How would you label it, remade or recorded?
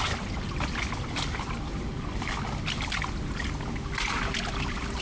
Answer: recorded